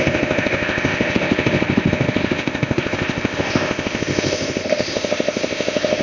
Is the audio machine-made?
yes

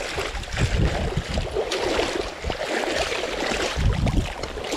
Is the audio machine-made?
no